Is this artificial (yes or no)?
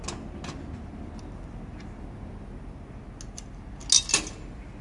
no